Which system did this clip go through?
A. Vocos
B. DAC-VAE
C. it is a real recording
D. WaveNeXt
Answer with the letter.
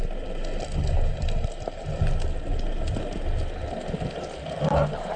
C